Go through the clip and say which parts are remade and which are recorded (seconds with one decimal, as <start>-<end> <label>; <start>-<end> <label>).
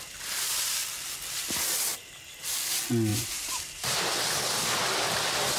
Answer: 0.0-3.1 recorded; 3.1-4.0 remade; 4.0-5.6 recorded